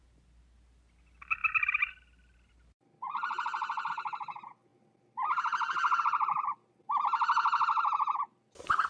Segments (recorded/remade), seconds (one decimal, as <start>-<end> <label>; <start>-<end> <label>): 0.0-8.9 recorded